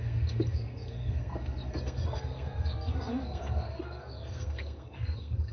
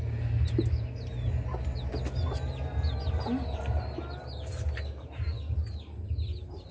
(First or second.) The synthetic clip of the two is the first